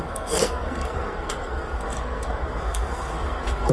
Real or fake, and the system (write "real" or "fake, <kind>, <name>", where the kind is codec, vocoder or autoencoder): fake, codec, SNAC